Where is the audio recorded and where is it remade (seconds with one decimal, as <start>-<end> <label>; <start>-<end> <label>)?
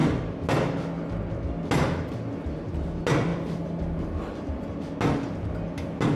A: 0.0-6.2 recorded